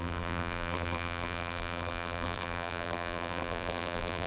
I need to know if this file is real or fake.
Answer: fake